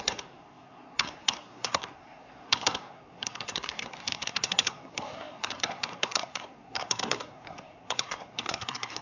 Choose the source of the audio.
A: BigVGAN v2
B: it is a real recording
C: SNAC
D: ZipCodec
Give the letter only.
C